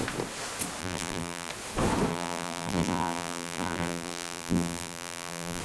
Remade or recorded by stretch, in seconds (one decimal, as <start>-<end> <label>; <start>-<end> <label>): 0.0-0.8 recorded; 0.8-1.5 remade; 1.5-2.1 recorded; 2.1-5.6 remade

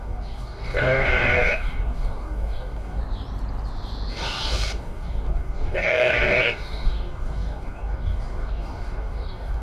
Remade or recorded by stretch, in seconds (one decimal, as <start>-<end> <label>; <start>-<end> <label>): 0.0-3.0 remade; 3.0-4.1 recorded; 4.1-9.6 remade

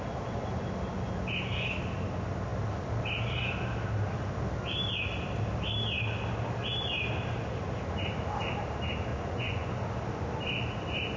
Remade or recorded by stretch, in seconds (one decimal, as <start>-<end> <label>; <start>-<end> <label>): 0.0-9.1 recorded; 9.1-9.7 remade; 9.7-11.2 recorded

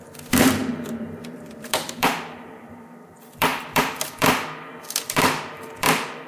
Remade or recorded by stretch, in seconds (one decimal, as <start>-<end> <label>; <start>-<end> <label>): 0.0-6.3 remade

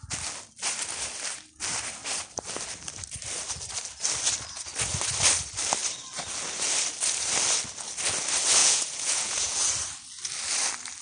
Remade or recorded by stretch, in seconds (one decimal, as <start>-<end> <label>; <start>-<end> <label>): 0.0-8.6 recorded; 8.6-9.7 remade; 9.7-11.0 recorded